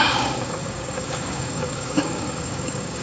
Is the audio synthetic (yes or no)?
yes